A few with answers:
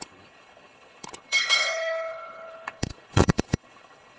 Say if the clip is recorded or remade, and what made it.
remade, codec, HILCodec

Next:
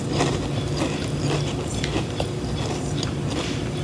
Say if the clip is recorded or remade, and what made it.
recorded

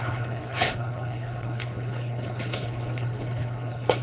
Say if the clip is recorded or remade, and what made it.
remade, codec, HILCodec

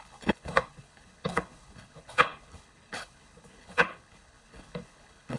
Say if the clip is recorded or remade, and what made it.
remade, codec, HILCodec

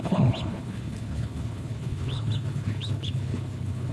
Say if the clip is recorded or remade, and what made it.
remade, codec, HILCodec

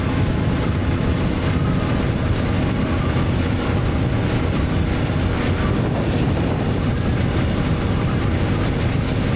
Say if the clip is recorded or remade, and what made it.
recorded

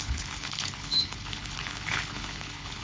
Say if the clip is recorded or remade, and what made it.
remade, codec, HILCodec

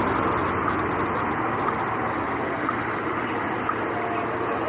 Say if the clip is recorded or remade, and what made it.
recorded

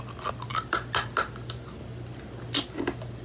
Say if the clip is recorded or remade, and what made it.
recorded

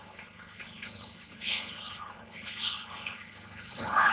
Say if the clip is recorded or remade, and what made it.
remade, codec, HILCodec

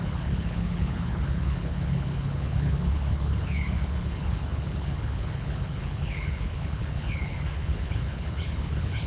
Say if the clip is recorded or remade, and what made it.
remade, codec, HILCodec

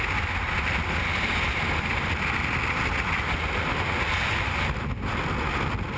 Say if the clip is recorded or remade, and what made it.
recorded